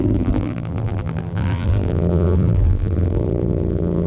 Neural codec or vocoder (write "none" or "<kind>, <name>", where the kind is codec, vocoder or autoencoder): vocoder, BigVGAN v2